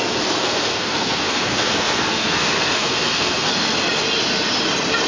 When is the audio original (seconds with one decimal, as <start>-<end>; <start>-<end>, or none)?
0.0-0.4; 3.5-5.1